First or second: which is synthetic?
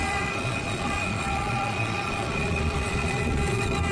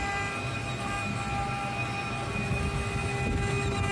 first